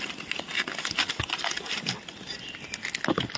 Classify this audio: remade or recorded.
recorded